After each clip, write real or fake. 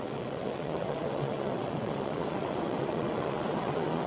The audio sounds fake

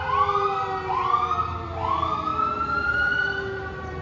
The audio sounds real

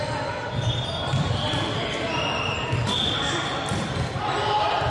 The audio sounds fake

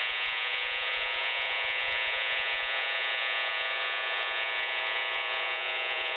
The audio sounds fake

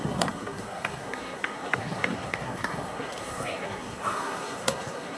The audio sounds fake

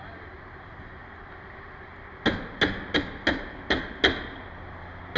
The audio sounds real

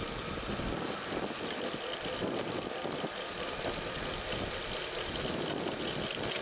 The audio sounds real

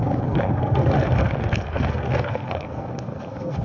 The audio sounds fake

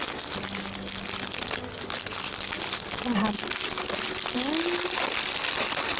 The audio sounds real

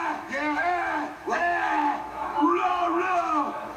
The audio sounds fake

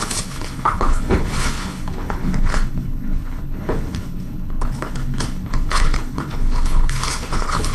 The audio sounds fake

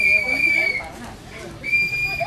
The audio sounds real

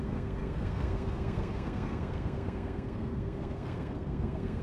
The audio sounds fake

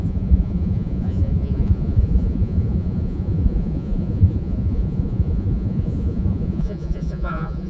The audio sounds fake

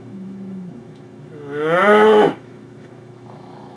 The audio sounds fake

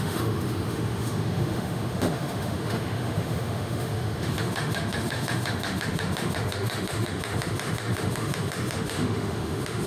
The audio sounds fake